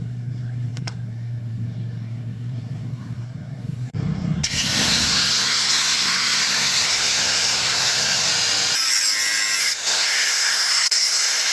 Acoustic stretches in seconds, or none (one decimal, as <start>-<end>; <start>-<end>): 8.3-9.6